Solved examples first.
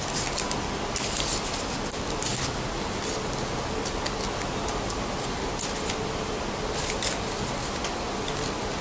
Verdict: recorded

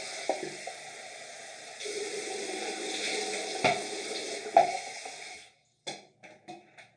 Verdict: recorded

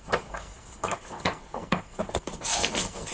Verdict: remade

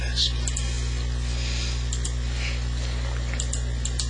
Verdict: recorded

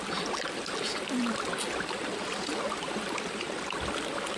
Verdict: recorded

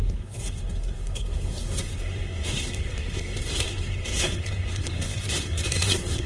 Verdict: remade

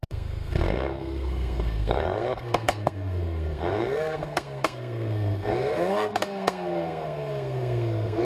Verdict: remade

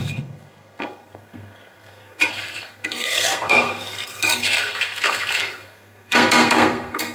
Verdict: remade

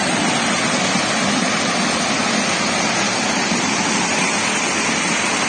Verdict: recorded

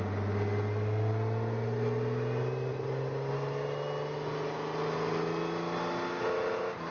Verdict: recorded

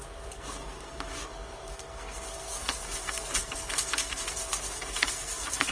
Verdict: remade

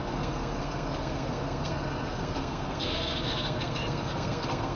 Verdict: remade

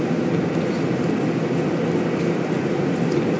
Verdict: recorded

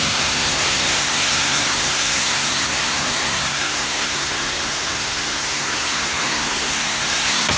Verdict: remade